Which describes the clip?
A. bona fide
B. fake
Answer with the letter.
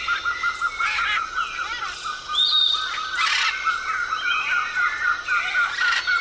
A